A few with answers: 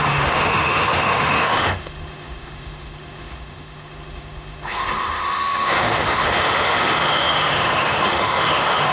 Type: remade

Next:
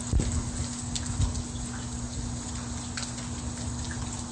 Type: recorded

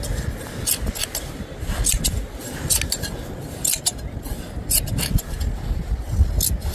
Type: recorded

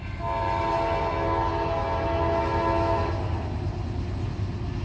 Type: recorded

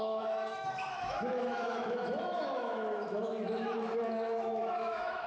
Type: remade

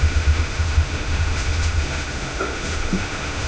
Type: remade